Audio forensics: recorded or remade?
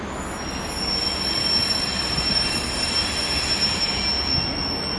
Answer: recorded